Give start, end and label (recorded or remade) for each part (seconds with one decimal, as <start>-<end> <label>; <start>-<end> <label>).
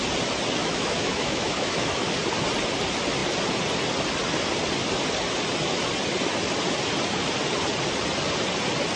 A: 0.0-0.6 recorded; 0.6-2.1 remade; 2.1-9.0 recorded